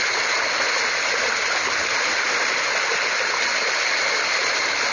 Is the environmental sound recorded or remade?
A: recorded